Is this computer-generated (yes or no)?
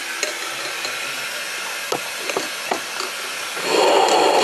no